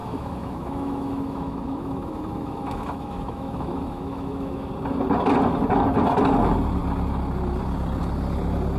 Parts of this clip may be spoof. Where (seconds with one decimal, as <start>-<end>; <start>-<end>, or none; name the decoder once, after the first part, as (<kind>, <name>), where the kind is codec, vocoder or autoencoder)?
0.0-4.7 (autoencoder, DAC-VAE)

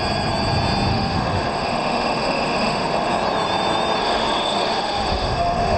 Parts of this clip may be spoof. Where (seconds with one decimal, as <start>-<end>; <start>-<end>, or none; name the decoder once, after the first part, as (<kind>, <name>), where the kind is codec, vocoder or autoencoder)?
0.9-3.1 (autoencoder, DAC-VAE); 4.0-5.8

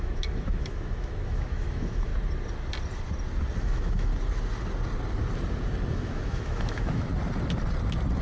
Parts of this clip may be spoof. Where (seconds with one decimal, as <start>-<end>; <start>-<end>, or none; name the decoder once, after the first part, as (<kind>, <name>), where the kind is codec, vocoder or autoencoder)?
0.0-2.1 (autoencoder, DAC-VAE); 3.6-4.1; 5.9-7.1

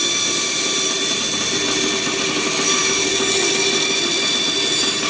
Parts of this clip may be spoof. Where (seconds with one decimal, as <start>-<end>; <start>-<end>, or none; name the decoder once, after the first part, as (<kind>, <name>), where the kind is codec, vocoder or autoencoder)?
none

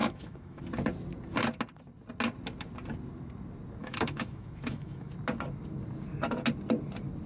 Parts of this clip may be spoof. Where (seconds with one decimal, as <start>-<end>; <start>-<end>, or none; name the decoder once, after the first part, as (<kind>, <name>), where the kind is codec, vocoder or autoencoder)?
0.0-0.6 (autoencoder, DAC-VAE); 3.8-5.1